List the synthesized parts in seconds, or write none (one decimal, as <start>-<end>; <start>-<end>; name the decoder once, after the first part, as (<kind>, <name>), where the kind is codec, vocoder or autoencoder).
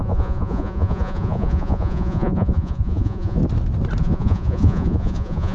0.0-3.4 (vocoder, Vocos); 4.0-5.5